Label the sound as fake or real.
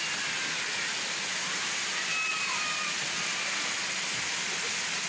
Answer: real